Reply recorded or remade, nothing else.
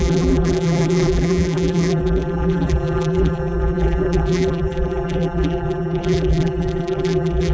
remade